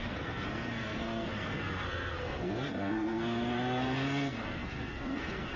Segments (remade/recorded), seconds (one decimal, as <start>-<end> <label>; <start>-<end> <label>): 0.0-5.6 remade